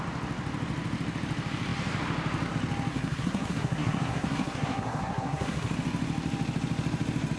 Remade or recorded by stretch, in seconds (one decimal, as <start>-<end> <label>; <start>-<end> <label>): 0.0-2.9 recorded; 2.9-5.7 remade; 5.7-7.4 recorded